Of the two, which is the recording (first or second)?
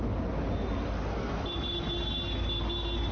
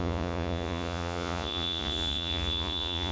first